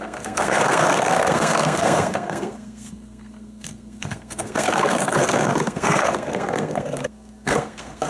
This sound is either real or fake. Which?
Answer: fake